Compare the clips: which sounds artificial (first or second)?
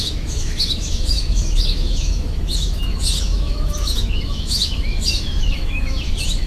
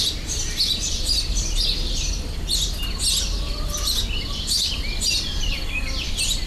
first